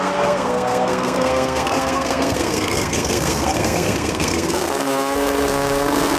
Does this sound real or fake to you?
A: fake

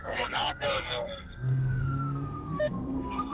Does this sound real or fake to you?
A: fake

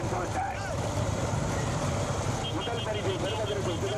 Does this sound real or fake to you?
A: real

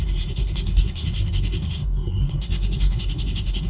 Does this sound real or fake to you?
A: fake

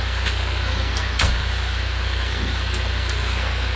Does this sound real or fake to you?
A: fake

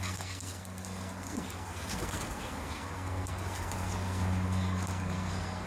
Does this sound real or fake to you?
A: fake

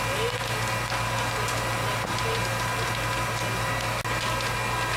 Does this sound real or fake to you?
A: real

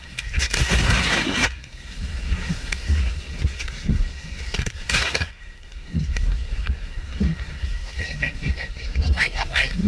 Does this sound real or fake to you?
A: fake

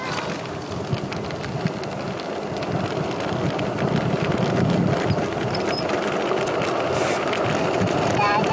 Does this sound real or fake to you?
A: real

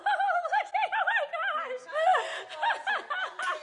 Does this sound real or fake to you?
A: real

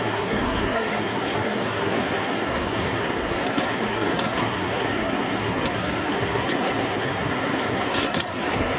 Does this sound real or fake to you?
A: fake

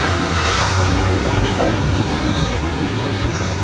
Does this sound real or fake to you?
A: fake